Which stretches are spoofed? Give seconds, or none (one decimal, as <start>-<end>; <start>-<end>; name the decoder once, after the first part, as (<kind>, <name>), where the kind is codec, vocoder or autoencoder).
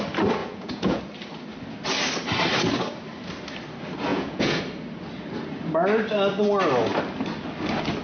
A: 0.4-1.0 (vocoder, Vocos); 4.1-4.6